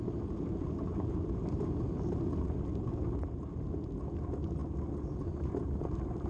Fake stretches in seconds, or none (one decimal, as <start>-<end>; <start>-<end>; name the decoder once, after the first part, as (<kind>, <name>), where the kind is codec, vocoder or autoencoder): none